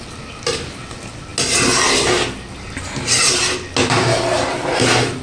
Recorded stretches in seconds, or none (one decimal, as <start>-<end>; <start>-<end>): 0.0-3.8; 4.7-5.2